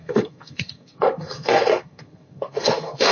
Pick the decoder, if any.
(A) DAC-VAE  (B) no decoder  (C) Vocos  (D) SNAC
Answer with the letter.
D